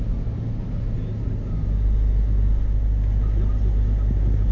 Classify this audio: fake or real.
real